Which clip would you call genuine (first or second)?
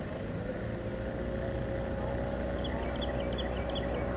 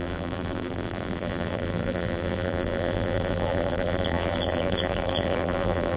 first